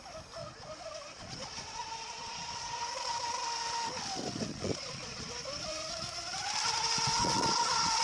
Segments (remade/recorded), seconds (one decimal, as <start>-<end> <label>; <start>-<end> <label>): 0.0-0.4 recorded; 0.4-2.8 remade; 2.8-4.5 recorded; 4.5-5.3 remade; 5.3-7.2 recorded; 7.2-8.0 remade